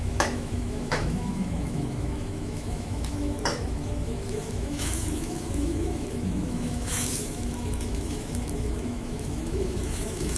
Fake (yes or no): yes